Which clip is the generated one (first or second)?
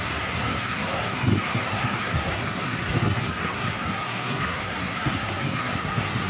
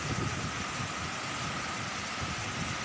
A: first